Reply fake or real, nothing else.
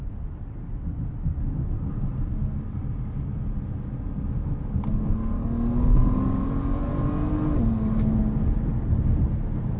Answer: real